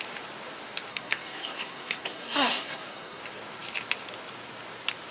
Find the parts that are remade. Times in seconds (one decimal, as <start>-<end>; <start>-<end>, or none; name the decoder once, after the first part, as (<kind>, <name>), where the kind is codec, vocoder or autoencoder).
0.9-3.2 (codec, SNAC)